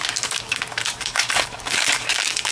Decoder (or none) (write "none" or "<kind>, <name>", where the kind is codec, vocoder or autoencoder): codec, DAC